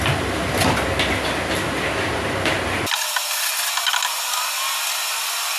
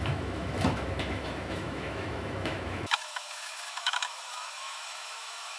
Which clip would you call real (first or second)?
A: first